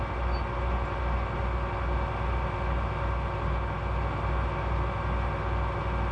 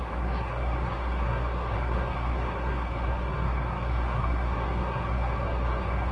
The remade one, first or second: second